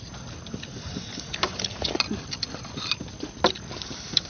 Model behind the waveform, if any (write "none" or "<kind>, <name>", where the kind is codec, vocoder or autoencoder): vocoder, BigVGAN v2